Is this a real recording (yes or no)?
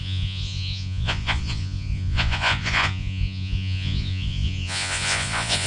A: no